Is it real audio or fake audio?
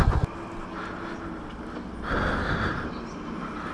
real